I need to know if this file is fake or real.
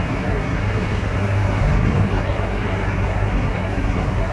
fake